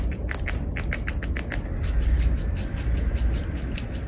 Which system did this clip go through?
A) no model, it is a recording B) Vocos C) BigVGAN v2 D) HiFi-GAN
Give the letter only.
A